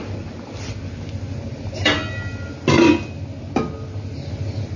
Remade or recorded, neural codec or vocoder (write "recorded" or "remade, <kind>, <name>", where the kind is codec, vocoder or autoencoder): recorded